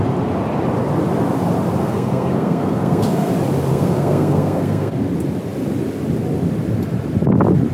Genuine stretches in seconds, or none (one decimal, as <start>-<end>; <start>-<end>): 0.0-1.8; 3.3-3.7; 4.9-7.7